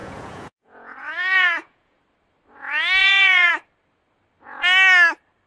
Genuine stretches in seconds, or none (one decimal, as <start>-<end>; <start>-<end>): 2.0-3.0; 3.5-5.5